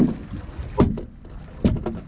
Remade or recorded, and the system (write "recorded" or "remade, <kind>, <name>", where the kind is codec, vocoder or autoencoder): recorded